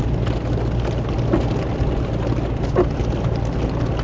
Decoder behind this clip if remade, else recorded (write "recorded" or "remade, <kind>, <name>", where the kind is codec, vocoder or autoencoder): recorded